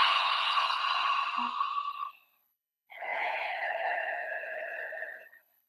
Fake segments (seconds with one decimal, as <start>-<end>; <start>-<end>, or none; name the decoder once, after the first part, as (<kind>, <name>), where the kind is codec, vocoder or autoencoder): 0.0-0.8 (codec, HILCodec); 1.9-5.7